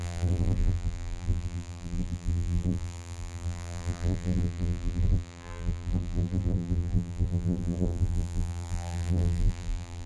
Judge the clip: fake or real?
fake